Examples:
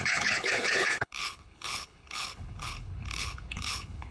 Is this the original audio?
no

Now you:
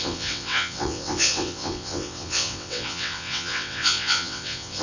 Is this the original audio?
no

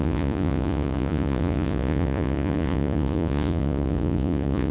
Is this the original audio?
no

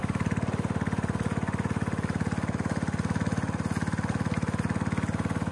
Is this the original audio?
yes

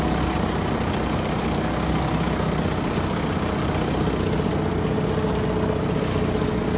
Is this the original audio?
yes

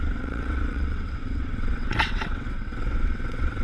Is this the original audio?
no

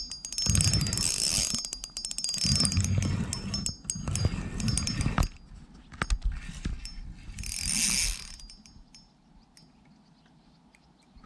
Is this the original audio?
yes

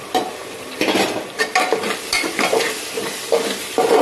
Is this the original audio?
yes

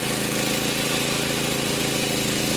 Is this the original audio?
yes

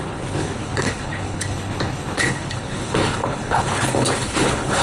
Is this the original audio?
no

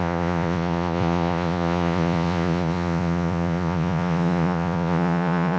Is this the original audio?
no